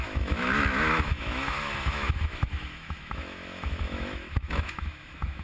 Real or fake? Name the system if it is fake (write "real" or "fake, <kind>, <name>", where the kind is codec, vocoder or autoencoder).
fake, autoencoder, DAC-VAE